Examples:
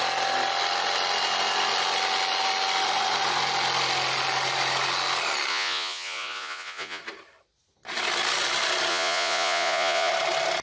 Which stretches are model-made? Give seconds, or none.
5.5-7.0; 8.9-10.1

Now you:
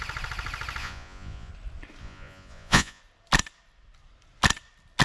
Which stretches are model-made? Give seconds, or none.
0.8-1.5; 2.0-3.0

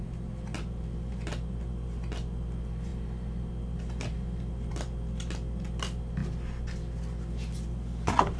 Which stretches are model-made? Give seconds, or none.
none

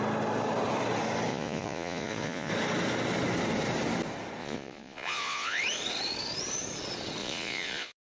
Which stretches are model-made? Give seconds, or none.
1.3-2.5; 4.4-5.6; 7.2-8.1

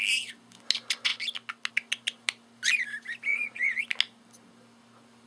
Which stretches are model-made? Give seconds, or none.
3.3-3.8

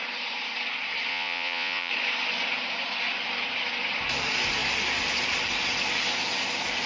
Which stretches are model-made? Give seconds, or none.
1.1-1.9

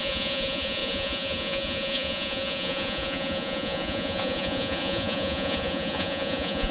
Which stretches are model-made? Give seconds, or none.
0.0-6.7